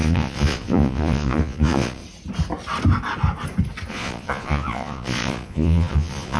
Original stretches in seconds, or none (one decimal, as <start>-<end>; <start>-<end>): 2.0-3.9